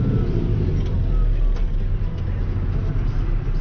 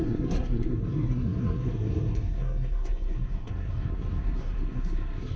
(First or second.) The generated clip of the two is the second